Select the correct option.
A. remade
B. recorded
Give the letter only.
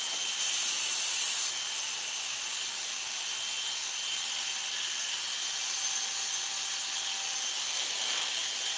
B